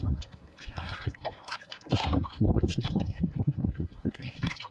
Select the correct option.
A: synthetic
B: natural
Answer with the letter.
A